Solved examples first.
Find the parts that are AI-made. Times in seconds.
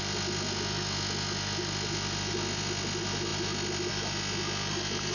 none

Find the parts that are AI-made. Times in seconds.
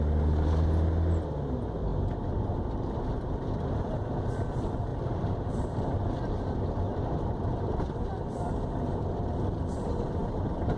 1.9-4.3 (vocoder, BigVGAN v2); 4.9-8.6; 10.2-10.8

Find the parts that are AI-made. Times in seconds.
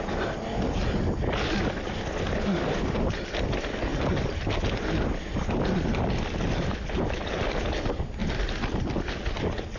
3.9-4.5 (vocoder, BigVGAN v2); 8.2-9.4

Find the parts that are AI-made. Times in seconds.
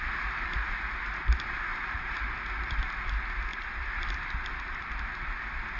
1.7-2.2 (vocoder, BigVGAN v2); 3.5-4.9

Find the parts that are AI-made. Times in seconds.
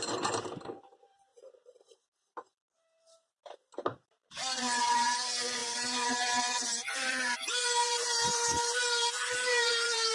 0.0-10.1 (vocoder, BigVGAN v2)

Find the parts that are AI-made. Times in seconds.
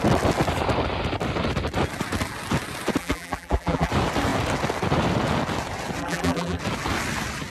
3.0-3.9 (vocoder, BigVGAN v2); 6.0-6.6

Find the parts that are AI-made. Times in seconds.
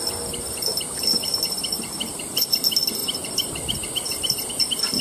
3.0-4.5 (vocoder, BigVGAN v2)